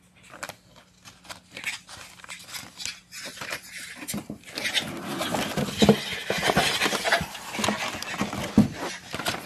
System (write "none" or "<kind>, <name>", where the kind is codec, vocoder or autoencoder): none